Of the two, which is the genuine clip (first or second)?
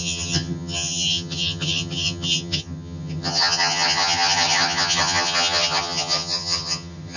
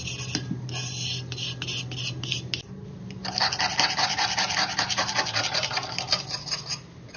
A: second